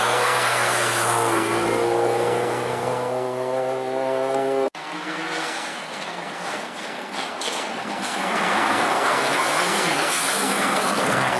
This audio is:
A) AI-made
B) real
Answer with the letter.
A